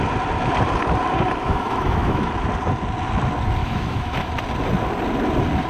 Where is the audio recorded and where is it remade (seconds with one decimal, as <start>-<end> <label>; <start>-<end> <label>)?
0.0-1.4 recorded; 1.4-2.3 remade; 2.3-3.6 recorded; 3.6-4.3 remade; 4.3-5.7 recorded